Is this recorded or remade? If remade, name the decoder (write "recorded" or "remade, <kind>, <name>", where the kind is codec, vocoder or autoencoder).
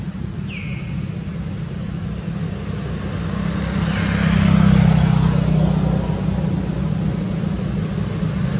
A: recorded